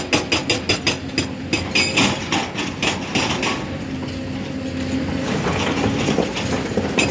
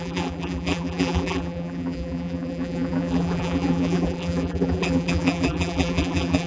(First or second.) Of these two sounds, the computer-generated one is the second